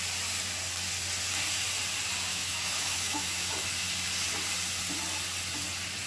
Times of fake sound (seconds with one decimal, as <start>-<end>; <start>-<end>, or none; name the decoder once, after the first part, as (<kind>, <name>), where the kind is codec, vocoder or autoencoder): 2.3-3.5 (autoencoder, DAC-VAE)